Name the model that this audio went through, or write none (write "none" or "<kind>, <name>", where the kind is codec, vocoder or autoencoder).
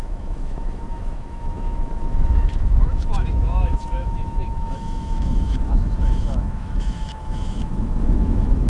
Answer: autoencoder, DAC-VAE